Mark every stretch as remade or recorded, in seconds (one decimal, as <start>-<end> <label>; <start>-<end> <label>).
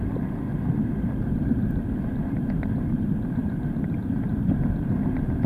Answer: 0.0-3.4 recorded; 3.4-4.0 remade; 4.0-5.5 recorded